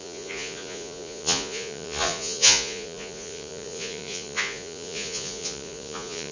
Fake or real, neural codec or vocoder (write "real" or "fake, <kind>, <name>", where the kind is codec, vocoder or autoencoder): fake, vocoder, Vocos